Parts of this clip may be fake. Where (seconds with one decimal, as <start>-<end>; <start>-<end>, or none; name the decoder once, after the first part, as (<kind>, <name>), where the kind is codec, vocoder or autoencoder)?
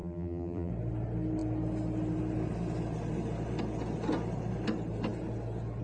0.0-0.7 (vocoder, BigVGAN v2)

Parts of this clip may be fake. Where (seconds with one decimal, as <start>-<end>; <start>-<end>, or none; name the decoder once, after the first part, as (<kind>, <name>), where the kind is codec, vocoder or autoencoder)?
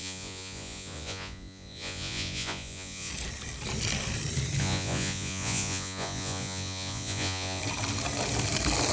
0.0-3.1 (vocoder, Vocos); 4.6-7.6